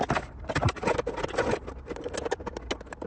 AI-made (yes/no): no